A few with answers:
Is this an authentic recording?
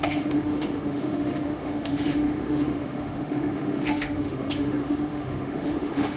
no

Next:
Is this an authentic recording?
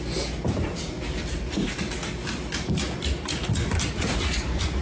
yes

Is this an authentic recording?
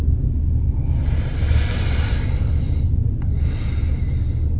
yes